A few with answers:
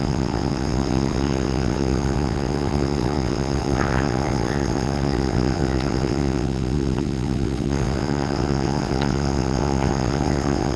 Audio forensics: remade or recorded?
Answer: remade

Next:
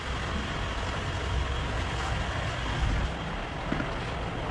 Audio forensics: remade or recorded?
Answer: recorded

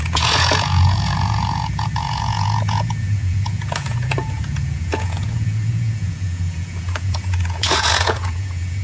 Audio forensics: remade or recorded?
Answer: remade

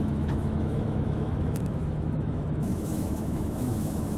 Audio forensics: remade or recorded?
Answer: remade